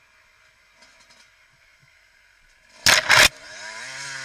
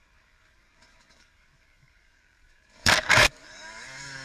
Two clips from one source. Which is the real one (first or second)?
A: first